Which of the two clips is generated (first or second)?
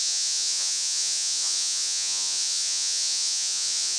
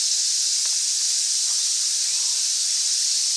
first